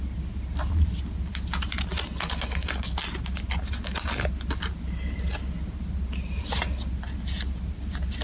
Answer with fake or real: real